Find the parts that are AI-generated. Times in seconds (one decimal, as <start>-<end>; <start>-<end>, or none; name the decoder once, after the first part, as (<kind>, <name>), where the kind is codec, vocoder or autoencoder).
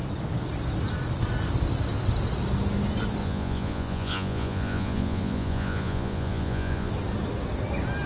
3.2-6.9 (vocoder, Vocos)